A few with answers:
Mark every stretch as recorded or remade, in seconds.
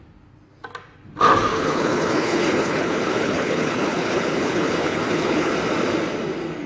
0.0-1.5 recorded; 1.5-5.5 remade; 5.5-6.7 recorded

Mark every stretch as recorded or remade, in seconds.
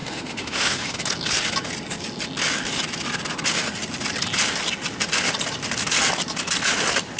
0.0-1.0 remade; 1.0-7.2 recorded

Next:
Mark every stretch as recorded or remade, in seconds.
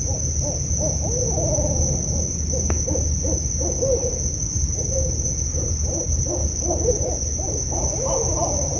0.0-8.8 recorded